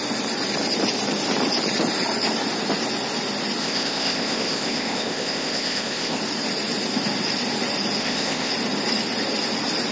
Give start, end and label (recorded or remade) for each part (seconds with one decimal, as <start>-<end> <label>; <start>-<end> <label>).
0.0-3.6 recorded; 3.6-6.2 remade; 6.2-8.0 recorded; 8.0-8.5 remade; 8.5-9.9 recorded